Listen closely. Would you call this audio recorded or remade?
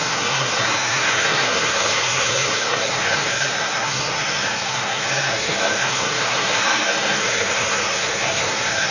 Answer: remade